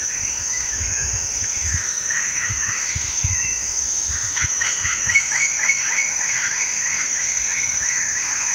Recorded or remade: remade